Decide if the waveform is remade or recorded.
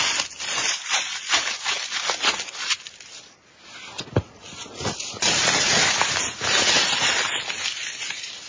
recorded